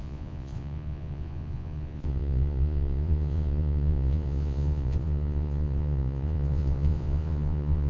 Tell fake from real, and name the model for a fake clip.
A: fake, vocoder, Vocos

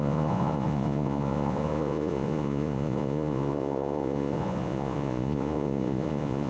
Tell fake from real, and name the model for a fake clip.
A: fake, vocoder, Vocos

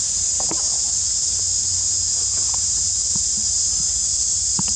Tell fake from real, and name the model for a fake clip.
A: real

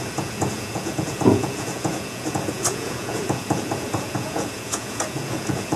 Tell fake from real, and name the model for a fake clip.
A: fake, vocoder, Vocos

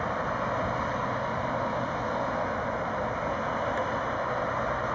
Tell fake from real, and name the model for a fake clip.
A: real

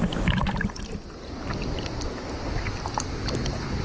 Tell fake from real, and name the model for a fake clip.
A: real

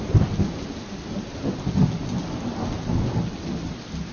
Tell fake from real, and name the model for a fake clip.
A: real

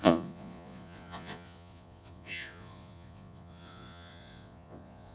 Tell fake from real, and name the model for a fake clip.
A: fake, vocoder, Vocos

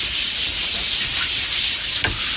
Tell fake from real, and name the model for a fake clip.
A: real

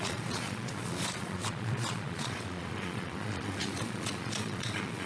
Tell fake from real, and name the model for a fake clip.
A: fake, vocoder, Vocos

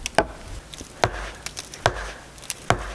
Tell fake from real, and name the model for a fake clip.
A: real